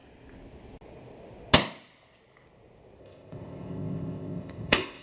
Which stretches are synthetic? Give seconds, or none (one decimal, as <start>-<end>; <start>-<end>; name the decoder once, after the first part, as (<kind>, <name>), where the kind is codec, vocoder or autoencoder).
3.0-5.0 (codec, ZipCodec)